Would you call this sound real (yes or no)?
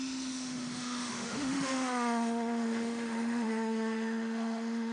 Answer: no